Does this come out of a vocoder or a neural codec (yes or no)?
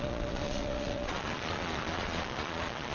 yes